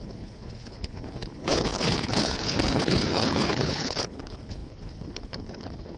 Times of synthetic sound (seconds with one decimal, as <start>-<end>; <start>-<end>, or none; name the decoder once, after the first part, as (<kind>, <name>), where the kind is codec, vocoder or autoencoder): 0.0-6.0 (codec, HILCodec)